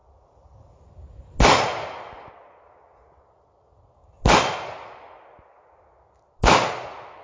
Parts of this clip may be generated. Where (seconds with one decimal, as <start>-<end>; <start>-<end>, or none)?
2.3-4.0; 6.7-7.2

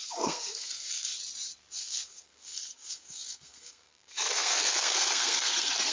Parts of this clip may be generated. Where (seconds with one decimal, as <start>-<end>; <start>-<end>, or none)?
0.0-1.1; 1.7-5.9

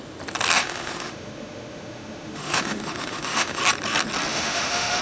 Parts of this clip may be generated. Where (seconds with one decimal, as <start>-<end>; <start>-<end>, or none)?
0.6-3.6; 4.3-5.0